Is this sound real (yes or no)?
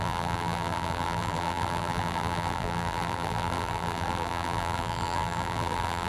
no